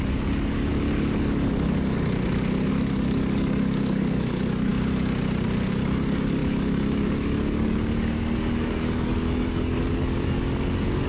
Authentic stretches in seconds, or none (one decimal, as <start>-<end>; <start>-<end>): 0.7-2.7; 4.7-5.7